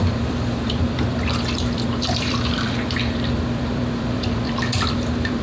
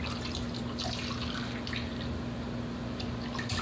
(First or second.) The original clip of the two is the second